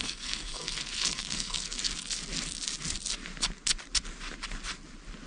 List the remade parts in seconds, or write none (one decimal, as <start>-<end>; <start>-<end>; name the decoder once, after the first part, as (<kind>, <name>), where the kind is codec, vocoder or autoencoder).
0.0-1.9 (codec, SNAC)